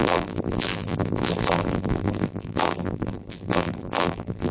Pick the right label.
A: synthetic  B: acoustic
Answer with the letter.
A